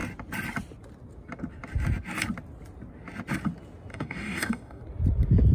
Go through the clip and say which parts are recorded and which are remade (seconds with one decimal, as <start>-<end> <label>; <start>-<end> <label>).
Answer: 0.0-3.9 recorded; 3.9-4.8 remade; 4.8-5.5 recorded